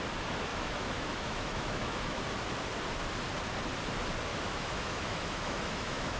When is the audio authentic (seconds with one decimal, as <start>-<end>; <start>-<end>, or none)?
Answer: 0.0-0.5; 2.2-4.3